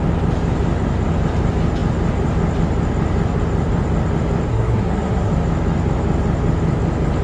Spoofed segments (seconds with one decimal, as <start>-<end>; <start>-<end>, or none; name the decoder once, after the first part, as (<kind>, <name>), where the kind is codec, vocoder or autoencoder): 4.5-5.3 (codec, SNAC)